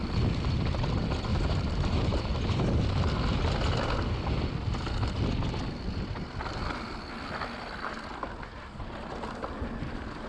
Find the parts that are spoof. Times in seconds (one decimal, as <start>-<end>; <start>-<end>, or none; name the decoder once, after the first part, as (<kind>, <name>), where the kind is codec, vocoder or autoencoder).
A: 1.3-2.8 (vocoder, BigVGAN v2)